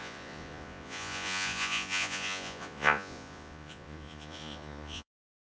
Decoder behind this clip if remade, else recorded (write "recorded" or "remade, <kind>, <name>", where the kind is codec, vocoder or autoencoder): remade, vocoder, Vocos